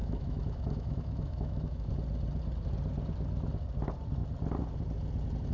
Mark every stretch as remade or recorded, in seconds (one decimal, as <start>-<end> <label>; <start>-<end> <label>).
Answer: 0.0-1.9 remade; 1.9-5.5 recorded